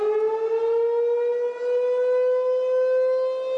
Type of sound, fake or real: real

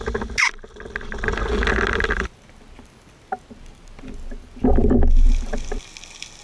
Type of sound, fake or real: real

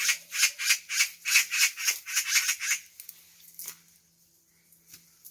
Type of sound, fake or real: real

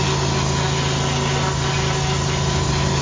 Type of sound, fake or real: real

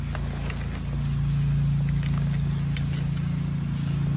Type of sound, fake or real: real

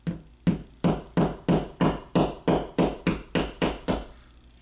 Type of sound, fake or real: real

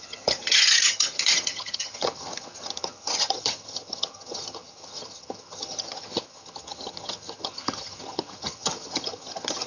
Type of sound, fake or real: fake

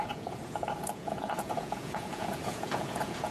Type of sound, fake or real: fake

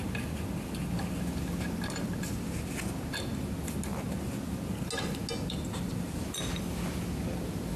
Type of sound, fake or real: real